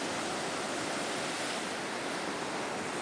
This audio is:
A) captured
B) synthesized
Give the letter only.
A